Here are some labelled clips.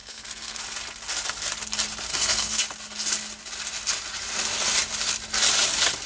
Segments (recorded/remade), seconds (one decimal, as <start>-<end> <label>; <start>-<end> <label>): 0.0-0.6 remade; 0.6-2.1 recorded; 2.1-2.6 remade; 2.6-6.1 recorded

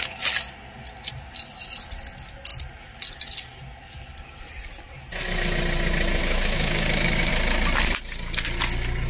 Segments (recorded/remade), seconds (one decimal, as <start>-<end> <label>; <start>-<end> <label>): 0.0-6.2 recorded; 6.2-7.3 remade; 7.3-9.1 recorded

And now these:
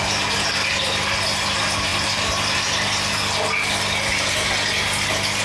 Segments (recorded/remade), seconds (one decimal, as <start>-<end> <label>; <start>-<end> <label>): 0.0-5.4 recorded

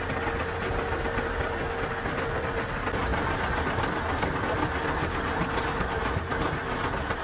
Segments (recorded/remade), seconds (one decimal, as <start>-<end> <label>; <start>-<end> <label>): 0.0-7.2 recorded

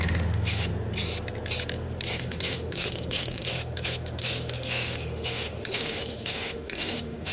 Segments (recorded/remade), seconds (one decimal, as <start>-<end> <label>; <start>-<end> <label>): 0.0-0.7 remade; 0.7-2.1 recorded; 2.1-7.3 remade

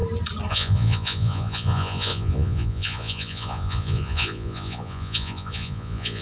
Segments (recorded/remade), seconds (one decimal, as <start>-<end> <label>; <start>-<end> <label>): 0.0-0.5 recorded; 0.5-6.2 remade